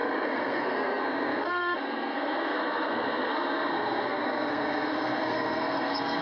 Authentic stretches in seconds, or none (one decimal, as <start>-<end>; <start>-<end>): none